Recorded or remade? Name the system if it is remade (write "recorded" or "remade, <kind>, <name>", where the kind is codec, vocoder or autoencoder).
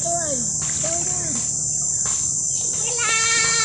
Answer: recorded